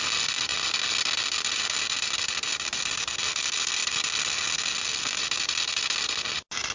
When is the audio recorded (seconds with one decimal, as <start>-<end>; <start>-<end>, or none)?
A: 0.0-6.7